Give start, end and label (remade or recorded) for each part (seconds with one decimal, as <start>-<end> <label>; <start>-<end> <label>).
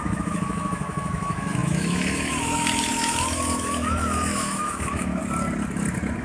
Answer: 0.0-5.2 remade; 5.2-6.2 recorded